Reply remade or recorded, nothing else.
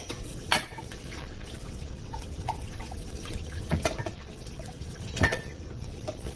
remade